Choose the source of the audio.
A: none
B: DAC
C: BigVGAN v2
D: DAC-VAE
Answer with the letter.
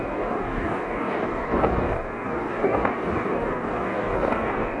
B